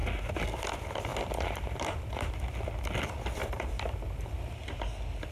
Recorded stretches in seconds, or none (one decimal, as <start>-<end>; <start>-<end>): 0.0-1.1; 2.3-3.4; 4.7-5.3